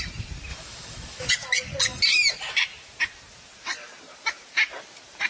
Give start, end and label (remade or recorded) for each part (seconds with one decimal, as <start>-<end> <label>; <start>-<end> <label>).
0.0-0.5 recorded; 0.5-1.3 remade; 1.3-5.3 recorded